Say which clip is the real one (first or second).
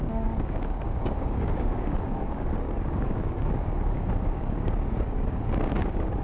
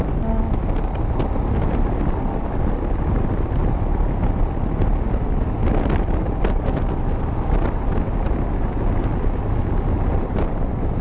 second